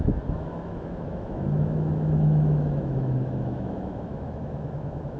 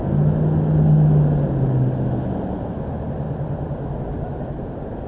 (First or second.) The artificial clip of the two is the first